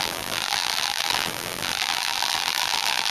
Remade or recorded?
remade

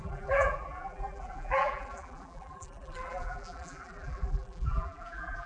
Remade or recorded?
remade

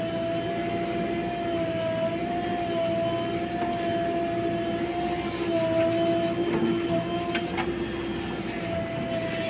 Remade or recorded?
recorded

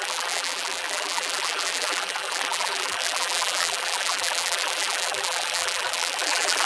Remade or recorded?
remade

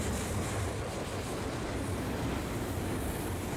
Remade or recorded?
recorded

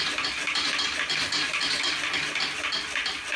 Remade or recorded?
recorded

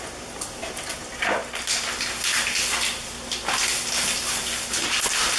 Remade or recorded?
recorded